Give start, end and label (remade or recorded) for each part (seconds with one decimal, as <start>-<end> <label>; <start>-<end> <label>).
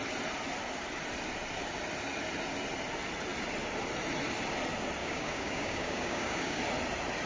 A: 0.0-5.0 recorded; 5.0-6.6 remade; 6.6-7.3 recorded